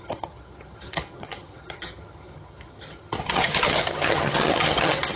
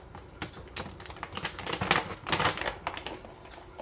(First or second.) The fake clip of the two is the first